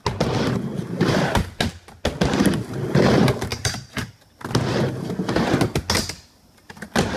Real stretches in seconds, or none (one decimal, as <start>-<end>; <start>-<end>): 0.0-3.5; 4.1-7.2